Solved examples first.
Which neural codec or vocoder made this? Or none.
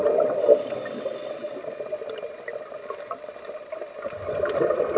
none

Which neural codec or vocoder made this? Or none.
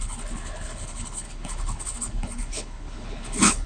codec, HILCodec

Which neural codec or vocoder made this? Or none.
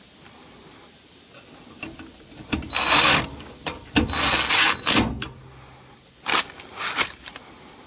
none